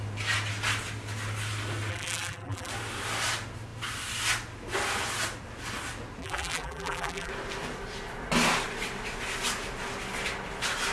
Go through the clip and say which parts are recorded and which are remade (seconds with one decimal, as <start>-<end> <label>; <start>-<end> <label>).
0.0-1.9 recorded; 1.9-2.7 remade; 2.7-6.2 recorded; 6.2-7.3 remade; 7.3-10.9 recorded